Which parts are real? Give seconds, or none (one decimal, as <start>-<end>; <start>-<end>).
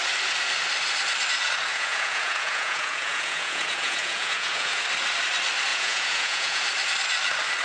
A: 0.0-1.7; 4.8-5.7; 6.6-7.6